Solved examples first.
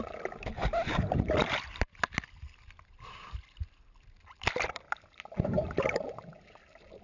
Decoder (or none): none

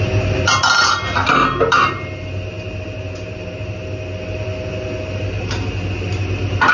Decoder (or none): none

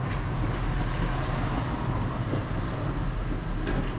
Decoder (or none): none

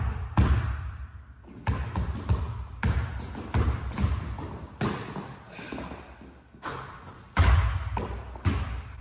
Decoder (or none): none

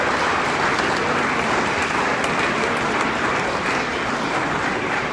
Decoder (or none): none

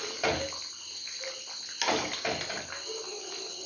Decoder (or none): none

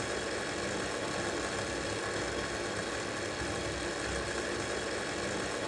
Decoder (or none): none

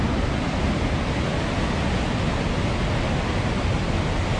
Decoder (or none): none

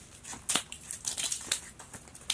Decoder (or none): none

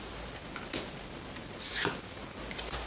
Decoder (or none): none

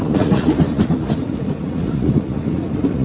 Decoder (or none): vocoder, Vocos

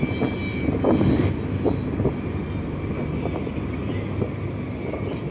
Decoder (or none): none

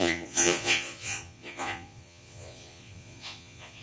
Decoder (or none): vocoder, Vocos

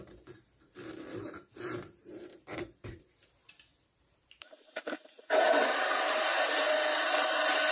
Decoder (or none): vocoder, BigVGAN v2